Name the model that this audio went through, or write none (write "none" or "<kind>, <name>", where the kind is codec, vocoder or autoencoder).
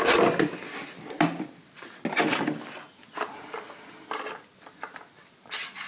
none